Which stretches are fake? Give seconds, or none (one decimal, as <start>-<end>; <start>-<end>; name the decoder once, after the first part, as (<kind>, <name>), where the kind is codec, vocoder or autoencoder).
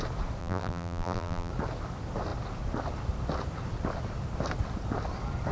0.4-1.5 (vocoder, BigVGAN v2)